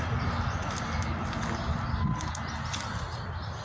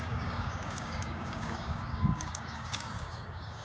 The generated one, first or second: second